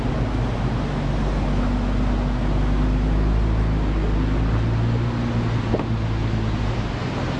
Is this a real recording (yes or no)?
yes